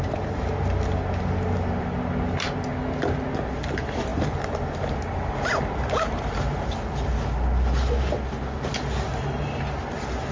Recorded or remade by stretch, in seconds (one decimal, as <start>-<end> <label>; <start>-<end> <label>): 0.0-9.1 recorded; 9.1-9.8 remade; 9.8-10.3 recorded